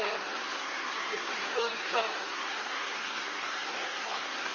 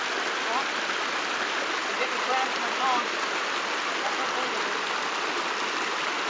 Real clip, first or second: second